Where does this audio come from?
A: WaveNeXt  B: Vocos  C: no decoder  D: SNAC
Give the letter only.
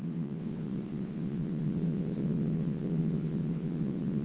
A